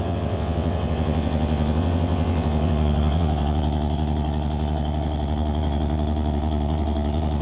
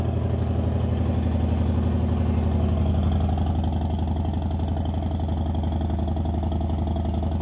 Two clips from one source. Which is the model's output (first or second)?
first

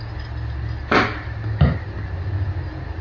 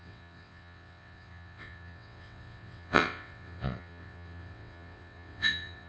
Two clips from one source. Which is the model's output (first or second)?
second